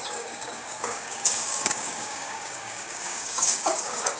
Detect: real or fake fake